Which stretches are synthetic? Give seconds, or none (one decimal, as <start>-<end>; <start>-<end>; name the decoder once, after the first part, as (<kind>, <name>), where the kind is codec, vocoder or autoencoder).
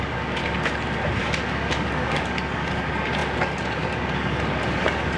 0.0-0.4 (codec, DAC); 1.2-5.2